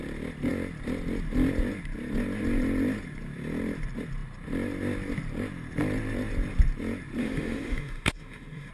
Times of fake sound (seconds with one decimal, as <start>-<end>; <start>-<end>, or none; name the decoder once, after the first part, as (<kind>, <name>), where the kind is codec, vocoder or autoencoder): 7.2-8.7 (autoencoder, DAC-VAE)